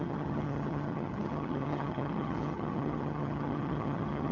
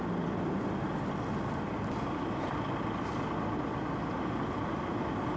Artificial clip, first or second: first